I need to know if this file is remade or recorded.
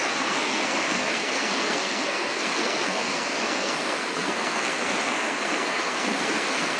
remade